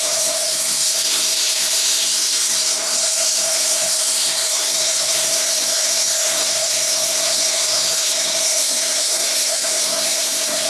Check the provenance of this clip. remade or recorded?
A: remade